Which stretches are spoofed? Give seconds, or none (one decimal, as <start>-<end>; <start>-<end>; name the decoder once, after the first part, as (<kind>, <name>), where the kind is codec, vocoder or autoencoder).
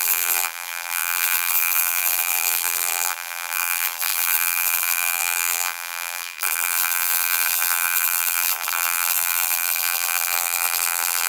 0.0-11.3 (vocoder, BigVGAN v2)